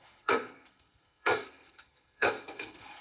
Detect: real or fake fake